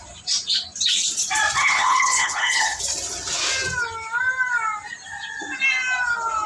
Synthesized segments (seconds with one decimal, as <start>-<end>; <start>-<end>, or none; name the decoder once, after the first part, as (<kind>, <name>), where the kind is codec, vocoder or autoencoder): 1.6-2.8 (codec, HILCodec)